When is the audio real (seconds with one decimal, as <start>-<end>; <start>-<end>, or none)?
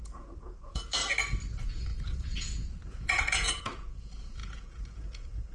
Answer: 1.0-1.5